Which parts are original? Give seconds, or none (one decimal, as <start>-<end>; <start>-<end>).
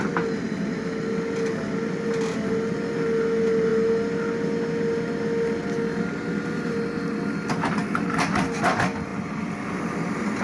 0.0-10.4